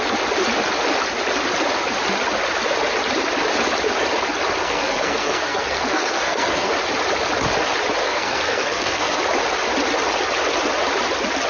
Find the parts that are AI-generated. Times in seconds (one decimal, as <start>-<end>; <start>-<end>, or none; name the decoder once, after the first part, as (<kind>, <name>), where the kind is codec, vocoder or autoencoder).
4.6-6.7 (codec, SNAC); 8.0-9.2

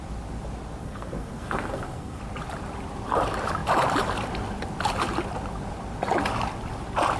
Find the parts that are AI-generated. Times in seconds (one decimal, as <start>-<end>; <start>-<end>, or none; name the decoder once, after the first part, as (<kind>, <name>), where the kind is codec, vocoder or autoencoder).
0.8-2.2 (codec, SNAC)

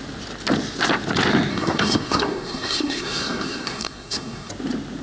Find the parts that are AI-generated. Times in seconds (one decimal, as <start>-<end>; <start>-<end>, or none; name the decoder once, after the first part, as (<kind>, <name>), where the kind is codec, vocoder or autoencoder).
1.5-4.5 (codec, SNAC)

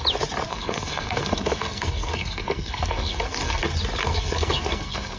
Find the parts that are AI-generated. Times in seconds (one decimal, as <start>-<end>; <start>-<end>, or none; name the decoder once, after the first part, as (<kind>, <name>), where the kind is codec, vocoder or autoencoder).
0.5-3.6 (codec, SNAC); 4.0-5.2

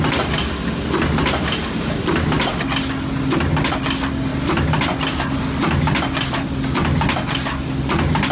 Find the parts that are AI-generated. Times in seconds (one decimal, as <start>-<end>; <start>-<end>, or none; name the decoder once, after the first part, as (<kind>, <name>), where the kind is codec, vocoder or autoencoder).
none